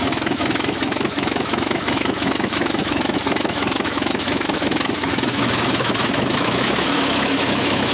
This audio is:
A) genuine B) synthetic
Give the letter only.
B